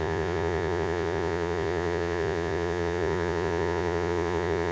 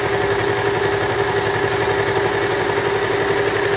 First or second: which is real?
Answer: second